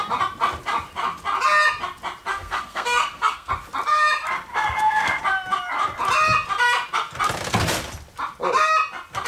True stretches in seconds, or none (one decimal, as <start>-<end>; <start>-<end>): 0.0-2.3; 3.5-4.5; 5.2-9.3